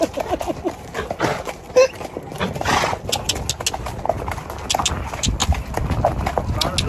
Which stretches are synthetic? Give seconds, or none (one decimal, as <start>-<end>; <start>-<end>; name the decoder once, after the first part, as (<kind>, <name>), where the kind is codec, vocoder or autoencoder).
none